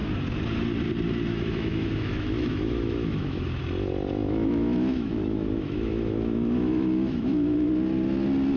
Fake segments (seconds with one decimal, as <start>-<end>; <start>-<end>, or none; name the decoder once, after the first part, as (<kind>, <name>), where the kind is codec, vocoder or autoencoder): 1.3-3.6 (autoencoder, DAC-VAE); 4.2-7.7